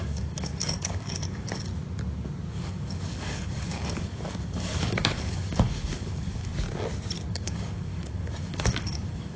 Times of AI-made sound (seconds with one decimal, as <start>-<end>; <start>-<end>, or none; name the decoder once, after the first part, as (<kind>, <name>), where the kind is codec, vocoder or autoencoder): 0.0-1.7 (codec, DAC); 2.5-6.5; 7.3-9.4